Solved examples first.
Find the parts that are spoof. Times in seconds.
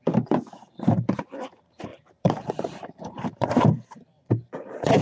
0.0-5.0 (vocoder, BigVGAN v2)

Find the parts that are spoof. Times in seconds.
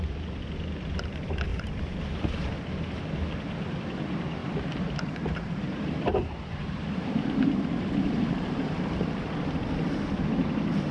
1.5-2.6 (vocoder, BigVGAN v2); 4.4-8.9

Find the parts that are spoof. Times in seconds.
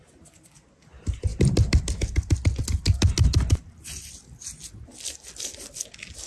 none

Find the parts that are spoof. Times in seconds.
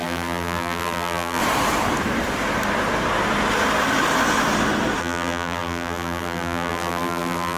0.0-1.4 (vocoder, BigVGAN v2); 5.0-7.6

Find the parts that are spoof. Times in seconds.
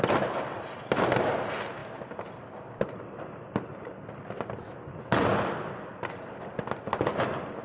none